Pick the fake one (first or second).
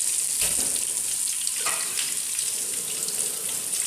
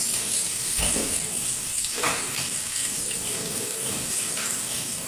second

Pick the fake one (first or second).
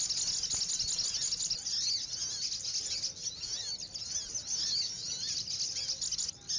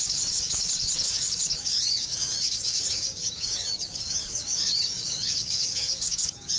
second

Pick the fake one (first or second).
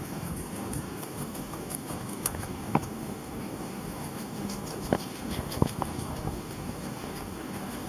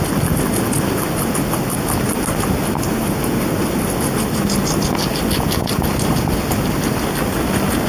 first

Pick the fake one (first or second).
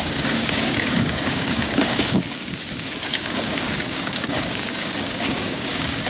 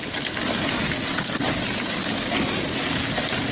first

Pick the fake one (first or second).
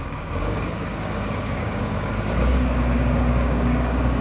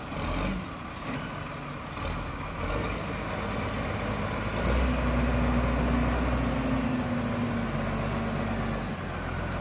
first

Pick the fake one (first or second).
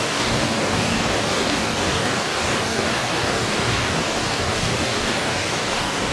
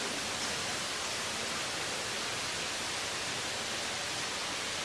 first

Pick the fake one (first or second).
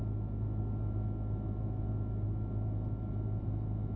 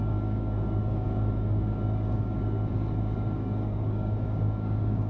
second